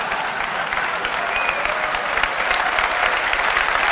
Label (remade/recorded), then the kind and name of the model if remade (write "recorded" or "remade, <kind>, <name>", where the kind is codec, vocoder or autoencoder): recorded